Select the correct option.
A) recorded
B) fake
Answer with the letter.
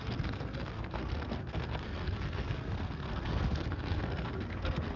B